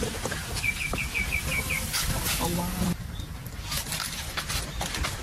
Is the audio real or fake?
real